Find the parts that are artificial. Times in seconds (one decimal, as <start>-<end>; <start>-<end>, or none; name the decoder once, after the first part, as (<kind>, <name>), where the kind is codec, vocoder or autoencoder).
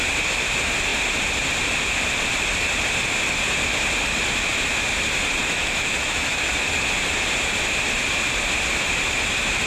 5.4-6.5 (autoencoder, DAC-VAE)